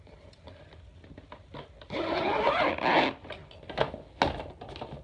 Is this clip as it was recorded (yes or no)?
yes